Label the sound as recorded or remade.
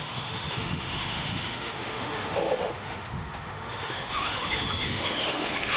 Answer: remade